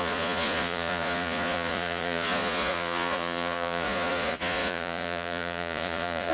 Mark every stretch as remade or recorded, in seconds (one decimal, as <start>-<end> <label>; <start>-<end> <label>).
0.0-6.3 remade